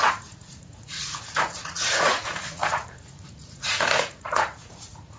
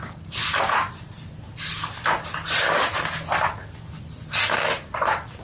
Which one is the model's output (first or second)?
first